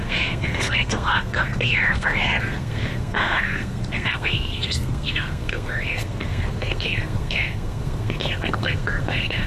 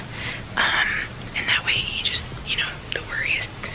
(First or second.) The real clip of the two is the second